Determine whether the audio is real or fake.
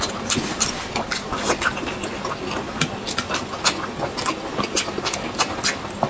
real